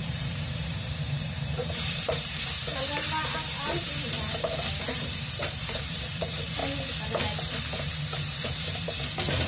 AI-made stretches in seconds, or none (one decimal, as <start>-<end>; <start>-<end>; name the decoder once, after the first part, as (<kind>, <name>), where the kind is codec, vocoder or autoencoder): 0.0-6.6 (vocoder, BigVGAN v2); 7.6-9.5